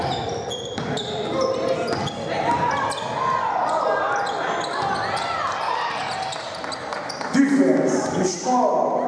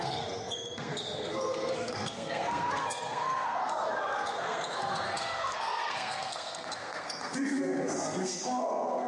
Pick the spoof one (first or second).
second